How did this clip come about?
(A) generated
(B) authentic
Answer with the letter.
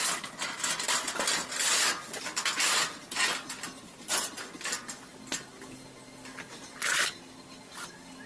B